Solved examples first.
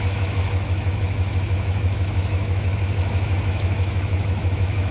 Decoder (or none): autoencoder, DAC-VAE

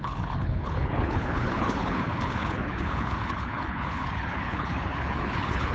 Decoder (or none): codec, HILCodec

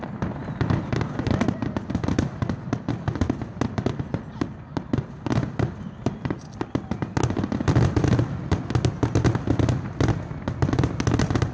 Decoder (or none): none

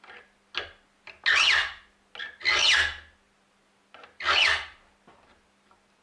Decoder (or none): none